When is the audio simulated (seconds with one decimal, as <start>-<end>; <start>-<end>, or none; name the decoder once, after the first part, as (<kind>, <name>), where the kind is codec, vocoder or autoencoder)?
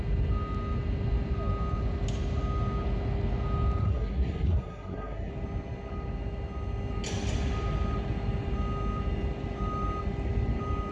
3.8-5.3 (codec, SNAC)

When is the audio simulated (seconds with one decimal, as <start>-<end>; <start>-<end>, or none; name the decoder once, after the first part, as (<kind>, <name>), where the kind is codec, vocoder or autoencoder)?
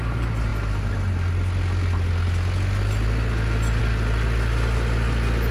none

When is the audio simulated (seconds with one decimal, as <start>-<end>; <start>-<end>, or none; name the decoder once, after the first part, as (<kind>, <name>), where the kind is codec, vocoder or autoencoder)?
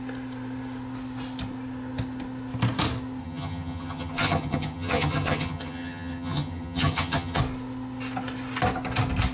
3.2-7.4 (vocoder, HiFi-GAN)